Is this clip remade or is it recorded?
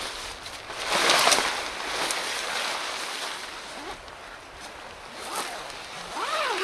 recorded